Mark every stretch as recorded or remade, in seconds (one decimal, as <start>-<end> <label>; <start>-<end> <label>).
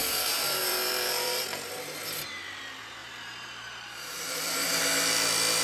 0.0-2.2 remade; 2.2-3.0 recorded; 3.0-4.7 remade; 4.7-5.6 recorded